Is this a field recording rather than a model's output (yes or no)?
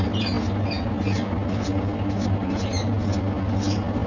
yes